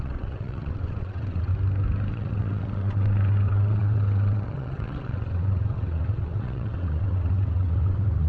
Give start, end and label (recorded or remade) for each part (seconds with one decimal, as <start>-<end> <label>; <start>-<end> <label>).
0.0-1.5 remade; 1.5-2.1 recorded; 2.1-8.3 remade